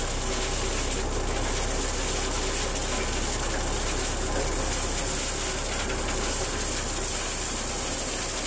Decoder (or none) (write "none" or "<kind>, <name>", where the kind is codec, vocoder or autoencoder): none